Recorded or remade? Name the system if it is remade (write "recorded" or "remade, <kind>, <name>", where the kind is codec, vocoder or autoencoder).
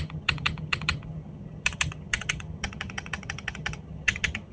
remade, vocoder, HiFi-GAN